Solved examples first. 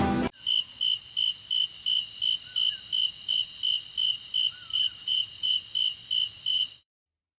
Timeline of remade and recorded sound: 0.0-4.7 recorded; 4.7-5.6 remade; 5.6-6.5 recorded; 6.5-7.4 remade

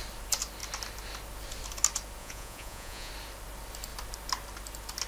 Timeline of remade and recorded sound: 0.0-2.2 recorded; 2.2-3.1 remade; 3.1-5.1 recorded

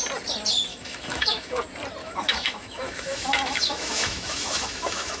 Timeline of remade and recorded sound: 0.0-0.7 recorded; 0.7-1.6 remade; 1.6-2.0 recorded; 2.0-5.2 remade